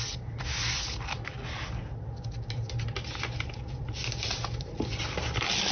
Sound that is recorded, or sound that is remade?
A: recorded